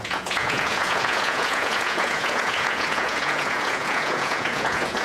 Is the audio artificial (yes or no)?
yes